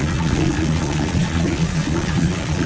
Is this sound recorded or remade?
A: remade